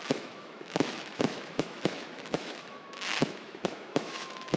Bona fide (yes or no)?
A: no